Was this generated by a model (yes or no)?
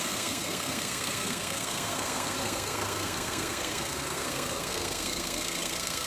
yes